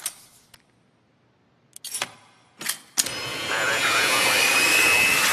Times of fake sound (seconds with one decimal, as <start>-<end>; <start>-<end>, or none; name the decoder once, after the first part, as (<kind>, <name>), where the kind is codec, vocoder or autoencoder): 3.3-4.3 (vocoder, Vocos)